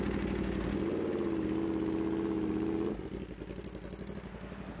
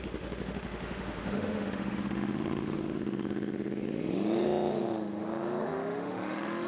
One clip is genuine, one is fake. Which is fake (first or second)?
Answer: second